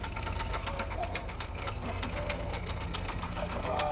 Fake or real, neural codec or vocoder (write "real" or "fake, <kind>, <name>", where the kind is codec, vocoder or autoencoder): fake, codec, SNAC